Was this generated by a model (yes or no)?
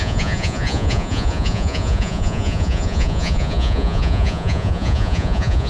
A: yes